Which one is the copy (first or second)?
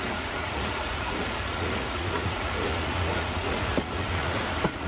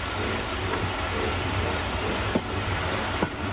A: first